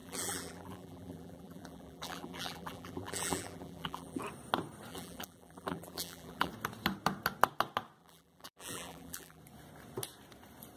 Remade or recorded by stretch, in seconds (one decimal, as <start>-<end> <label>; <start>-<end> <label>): 0.0-4.2 remade; 4.2-4.9 recorded; 4.9-6.5 remade; 6.5-8.0 recorded; 8.0-9.4 remade; 9.4-10.8 recorded